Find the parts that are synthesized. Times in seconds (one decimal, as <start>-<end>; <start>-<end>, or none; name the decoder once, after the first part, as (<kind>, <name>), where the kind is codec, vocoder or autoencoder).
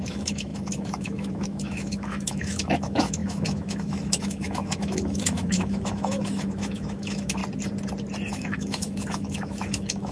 0.0-7.4 (autoencoder, DAC-VAE); 8.3-10.1